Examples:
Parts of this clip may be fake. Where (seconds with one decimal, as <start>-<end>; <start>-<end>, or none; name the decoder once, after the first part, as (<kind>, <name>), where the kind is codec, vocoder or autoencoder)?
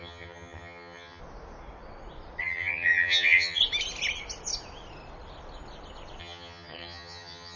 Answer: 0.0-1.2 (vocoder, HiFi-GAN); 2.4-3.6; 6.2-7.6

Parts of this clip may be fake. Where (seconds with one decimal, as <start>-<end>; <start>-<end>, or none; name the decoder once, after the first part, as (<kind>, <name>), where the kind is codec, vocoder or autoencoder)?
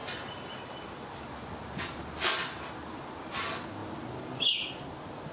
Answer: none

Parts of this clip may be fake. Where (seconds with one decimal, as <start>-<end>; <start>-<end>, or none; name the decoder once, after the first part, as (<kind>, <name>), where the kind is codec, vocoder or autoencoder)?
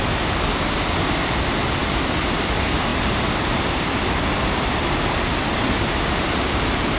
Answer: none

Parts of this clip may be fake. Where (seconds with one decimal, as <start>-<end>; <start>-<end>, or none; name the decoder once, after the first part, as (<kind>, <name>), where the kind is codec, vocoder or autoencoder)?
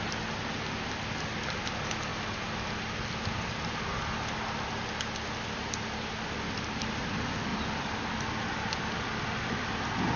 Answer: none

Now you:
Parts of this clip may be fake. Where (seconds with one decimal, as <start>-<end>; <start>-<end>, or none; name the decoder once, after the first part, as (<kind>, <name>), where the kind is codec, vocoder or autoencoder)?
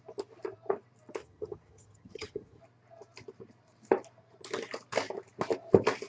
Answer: 1.2-2.6 (vocoder, HiFi-GAN)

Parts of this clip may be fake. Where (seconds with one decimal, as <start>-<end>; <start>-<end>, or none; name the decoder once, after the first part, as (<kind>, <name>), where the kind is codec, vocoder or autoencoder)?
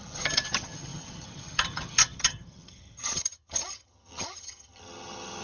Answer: 0.0-5.4 (vocoder, HiFi-GAN)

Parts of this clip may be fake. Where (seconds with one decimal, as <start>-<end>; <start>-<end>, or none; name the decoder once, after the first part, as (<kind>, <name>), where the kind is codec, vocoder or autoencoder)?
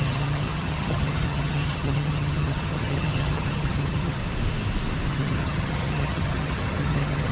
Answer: 0.0-4.2 (vocoder, HiFi-GAN); 5.1-7.3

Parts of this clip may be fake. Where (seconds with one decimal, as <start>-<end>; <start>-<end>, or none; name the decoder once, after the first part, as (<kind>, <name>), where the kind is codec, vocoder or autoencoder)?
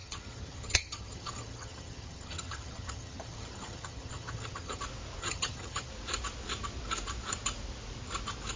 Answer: 0.0-4.8 (vocoder, HiFi-GAN); 5.2-5.9